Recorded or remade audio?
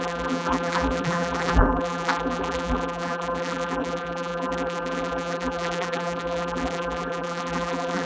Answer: remade